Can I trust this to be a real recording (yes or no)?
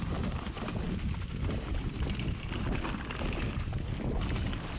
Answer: yes